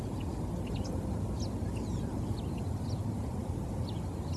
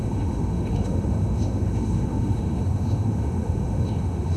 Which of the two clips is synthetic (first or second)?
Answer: second